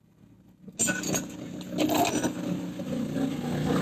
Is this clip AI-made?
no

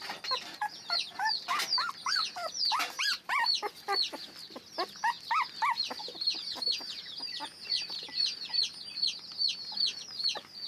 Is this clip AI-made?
no